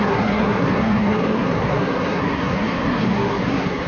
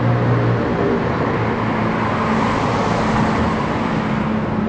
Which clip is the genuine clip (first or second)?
second